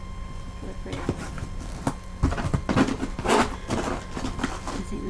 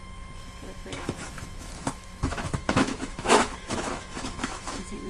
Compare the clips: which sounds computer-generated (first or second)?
second